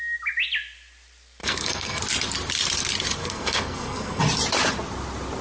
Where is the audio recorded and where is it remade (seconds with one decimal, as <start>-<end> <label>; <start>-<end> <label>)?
0.0-1.4 recorded; 1.4-2.0 remade; 2.0-3.2 recorded; 3.2-4.2 remade; 4.2-5.4 recorded